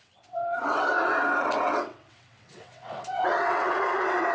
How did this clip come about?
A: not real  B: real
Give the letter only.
A